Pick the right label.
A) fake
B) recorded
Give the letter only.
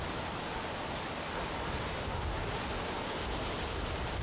B